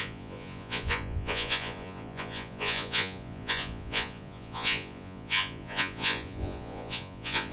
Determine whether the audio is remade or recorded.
remade